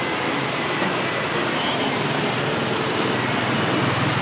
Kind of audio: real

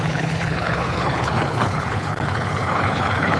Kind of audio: fake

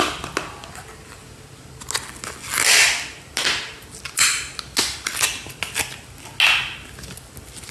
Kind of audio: real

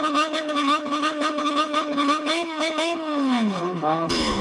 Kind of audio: fake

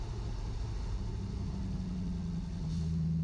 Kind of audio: real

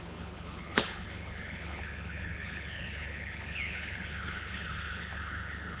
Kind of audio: fake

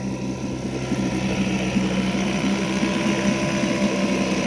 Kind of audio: real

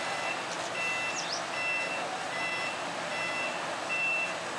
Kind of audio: real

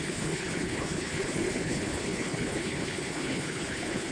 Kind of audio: fake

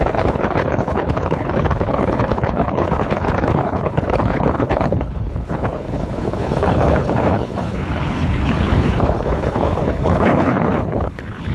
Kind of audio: fake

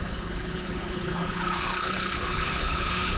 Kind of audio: fake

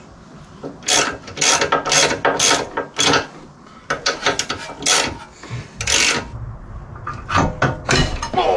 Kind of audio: real